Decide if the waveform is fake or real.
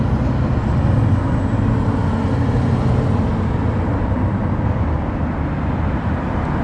real